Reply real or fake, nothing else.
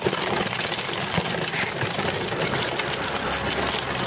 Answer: real